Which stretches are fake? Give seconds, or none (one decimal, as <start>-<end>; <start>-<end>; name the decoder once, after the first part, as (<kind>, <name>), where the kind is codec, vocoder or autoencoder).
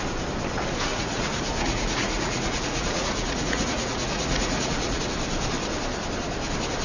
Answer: 0.9-5.0 (vocoder, Vocos)